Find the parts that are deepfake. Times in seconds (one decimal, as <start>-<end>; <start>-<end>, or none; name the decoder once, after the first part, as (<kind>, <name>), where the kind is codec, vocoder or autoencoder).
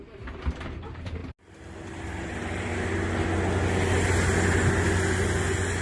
none